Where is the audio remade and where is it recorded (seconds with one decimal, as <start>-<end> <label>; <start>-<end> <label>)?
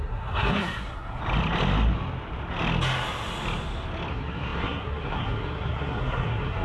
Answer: 0.0-1.2 remade; 1.2-4.1 recorded; 4.1-6.6 remade